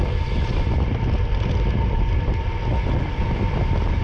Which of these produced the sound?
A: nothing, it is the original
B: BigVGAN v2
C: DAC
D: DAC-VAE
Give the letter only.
A